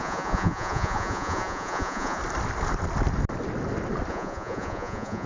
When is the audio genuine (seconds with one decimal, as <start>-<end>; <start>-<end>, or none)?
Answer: 2.2-4.1